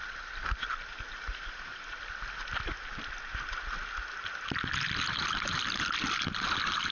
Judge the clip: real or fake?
real